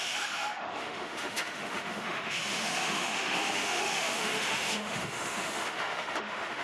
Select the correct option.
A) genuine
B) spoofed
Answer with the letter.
B